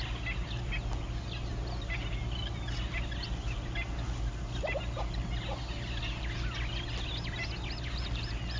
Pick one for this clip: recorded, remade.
recorded